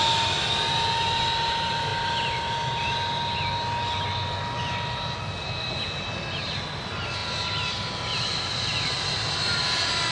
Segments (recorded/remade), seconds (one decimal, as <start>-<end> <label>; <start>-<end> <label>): 0.0-10.1 recorded